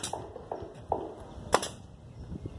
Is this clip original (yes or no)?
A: yes